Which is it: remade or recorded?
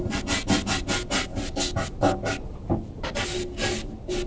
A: recorded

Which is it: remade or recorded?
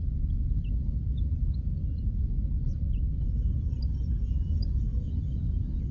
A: recorded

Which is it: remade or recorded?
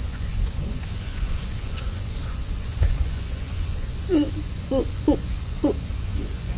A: remade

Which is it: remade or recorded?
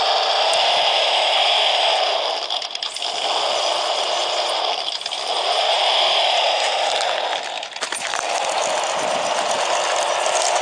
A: recorded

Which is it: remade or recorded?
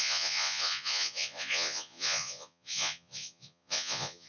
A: remade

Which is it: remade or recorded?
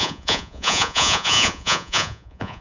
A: remade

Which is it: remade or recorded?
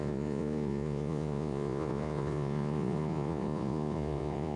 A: remade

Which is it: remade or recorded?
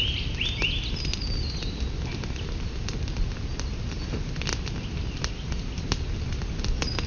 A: recorded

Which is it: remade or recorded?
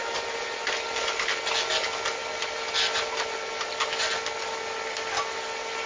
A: recorded